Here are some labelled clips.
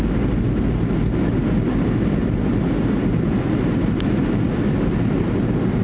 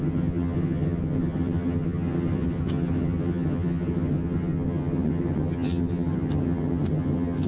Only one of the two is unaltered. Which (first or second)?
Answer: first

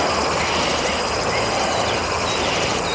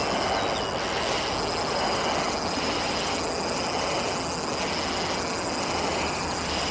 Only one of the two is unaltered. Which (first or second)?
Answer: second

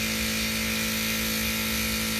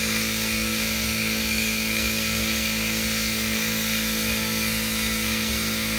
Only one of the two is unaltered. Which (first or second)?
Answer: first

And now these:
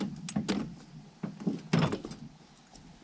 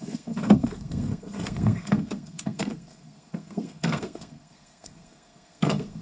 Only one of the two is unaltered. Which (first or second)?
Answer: first